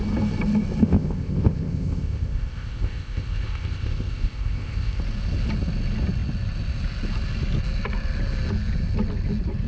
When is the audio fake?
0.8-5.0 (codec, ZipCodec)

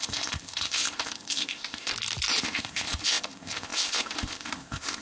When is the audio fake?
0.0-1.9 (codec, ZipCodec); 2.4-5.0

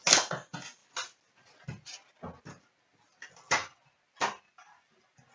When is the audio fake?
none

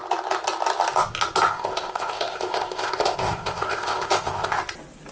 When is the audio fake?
1.5-4.6 (codec, ZipCodec)